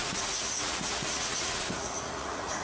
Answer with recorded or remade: remade